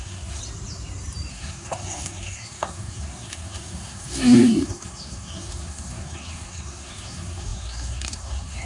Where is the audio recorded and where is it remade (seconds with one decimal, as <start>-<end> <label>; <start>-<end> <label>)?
0.0-0.4 remade; 0.4-1.3 recorded; 1.3-8.7 remade